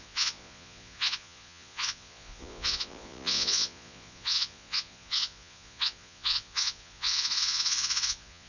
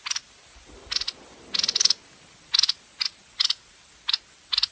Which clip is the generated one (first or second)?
first